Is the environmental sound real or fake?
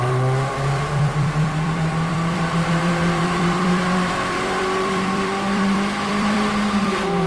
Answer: fake